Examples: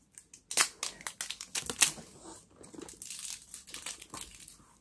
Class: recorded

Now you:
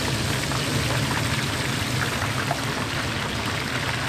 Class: recorded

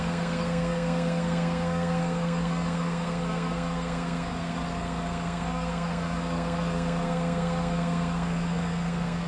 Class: remade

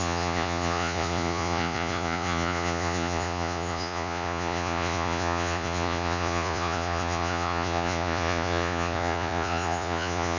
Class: remade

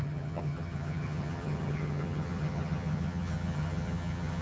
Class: remade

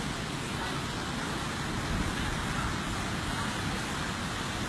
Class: recorded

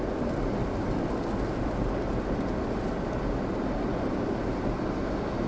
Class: recorded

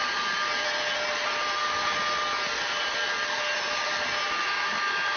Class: recorded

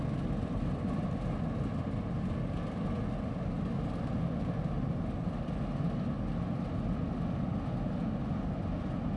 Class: recorded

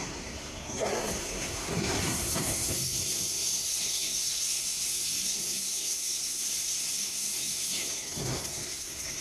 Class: remade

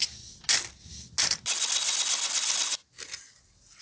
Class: recorded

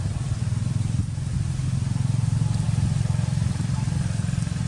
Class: recorded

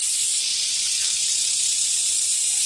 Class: remade